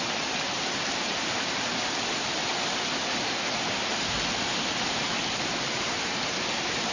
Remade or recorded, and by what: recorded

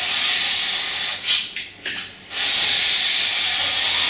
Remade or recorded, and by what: recorded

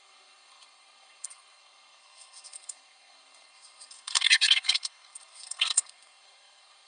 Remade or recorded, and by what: remade, codec, SNAC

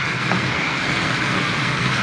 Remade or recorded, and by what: remade, codec, SNAC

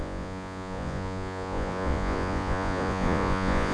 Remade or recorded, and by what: remade, vocoder, Vocos